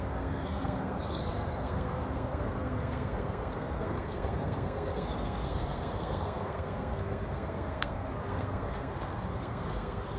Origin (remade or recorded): remade